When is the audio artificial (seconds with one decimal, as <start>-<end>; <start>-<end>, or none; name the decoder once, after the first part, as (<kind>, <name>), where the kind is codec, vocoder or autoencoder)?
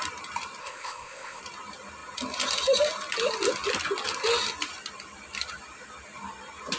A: 0.6-1.4 (codec, ZipCodec)